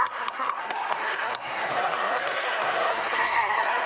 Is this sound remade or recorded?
remade